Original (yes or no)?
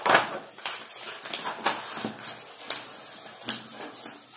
yes